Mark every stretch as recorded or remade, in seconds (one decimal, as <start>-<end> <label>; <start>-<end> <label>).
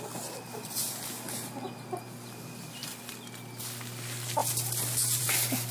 0.0-5.7 recorded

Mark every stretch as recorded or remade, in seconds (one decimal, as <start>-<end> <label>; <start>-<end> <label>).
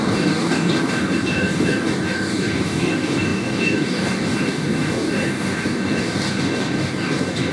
0.0-7.5 remade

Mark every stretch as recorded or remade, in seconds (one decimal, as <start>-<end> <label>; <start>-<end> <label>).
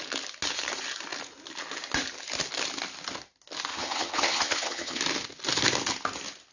0.0-3.7 recorded; 3.7-5.0 remade; 5.0-6.5 recorded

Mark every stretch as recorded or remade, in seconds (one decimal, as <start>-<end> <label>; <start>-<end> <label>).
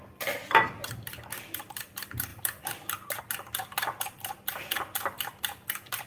0.0-6.1 recorded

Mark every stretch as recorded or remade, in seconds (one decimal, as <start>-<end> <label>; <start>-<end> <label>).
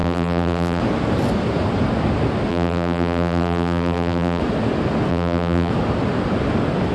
0.0-0.8 remade; 0.8-2.5 recorded; 2.5-4.4 remade; 4.4-5.1 recorded; 5.1-5.7 remade; 5.7-6.9 recorded